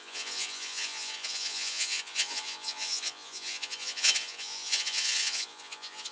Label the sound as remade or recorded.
remade